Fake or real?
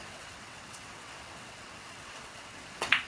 fake